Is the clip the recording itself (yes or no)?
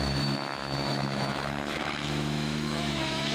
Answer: no